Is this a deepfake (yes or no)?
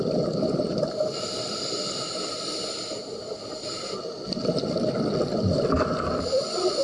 yes